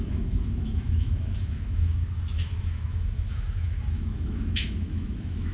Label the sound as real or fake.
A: fake